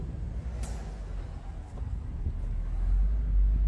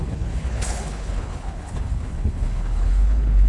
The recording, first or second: first